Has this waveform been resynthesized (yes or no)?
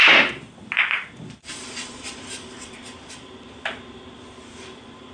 no